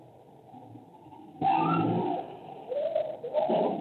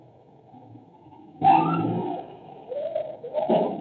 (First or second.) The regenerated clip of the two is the second